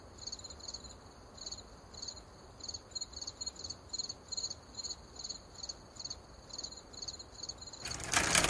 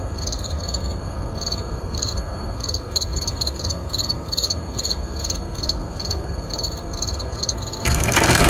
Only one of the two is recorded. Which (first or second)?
first